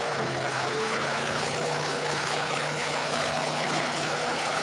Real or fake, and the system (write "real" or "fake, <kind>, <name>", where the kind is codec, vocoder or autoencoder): fake, codec, HILCodec